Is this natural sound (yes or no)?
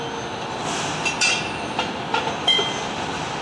yes